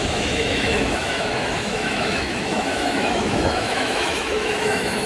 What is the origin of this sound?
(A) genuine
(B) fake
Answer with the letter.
B